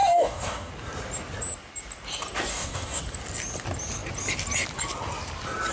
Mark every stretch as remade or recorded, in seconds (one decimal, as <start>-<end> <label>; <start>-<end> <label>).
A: 0.0-0.7 remade; 0.7-2.5 recorded; 2.5-3.0 remade; 3.0-5.7 recorded